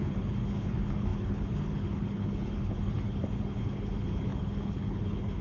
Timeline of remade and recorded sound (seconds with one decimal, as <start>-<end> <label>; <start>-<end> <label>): 0.0-5.4 remade